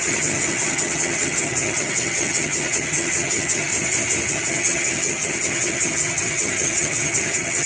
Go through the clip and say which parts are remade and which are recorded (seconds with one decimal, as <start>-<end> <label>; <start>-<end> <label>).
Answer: 0.0-3.7 remade; 3.7-4.3 recorded; 4.3-7.7 remade